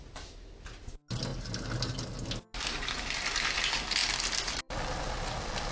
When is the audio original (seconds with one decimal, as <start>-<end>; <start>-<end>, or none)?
0.0-5.7